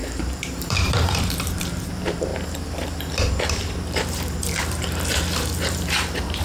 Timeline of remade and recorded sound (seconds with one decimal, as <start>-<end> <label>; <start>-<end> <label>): 0.0-2.3 remade; 2.3-3.0 recorded; 3.0-6.4 remade